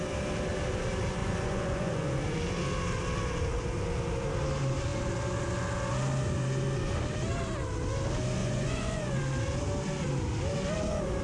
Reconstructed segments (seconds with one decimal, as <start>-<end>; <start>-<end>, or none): 1.2-2.2; 8.4-9.2